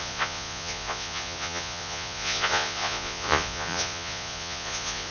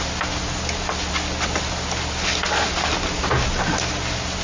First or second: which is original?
second